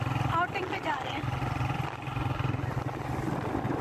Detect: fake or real real